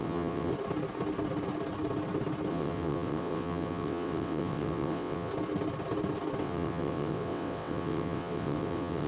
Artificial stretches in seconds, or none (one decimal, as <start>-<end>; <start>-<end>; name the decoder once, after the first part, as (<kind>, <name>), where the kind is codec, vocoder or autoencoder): 0.0-0.5 (vocoder, WaveNeXt); 2.5-5.3; 6.4-9.1